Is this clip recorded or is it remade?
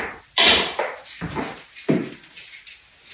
recorded